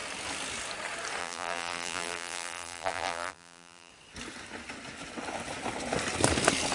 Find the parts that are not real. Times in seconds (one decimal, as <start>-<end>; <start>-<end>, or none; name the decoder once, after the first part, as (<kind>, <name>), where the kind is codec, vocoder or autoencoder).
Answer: 1.2-3.9 (vocoder, BigVGAN v2)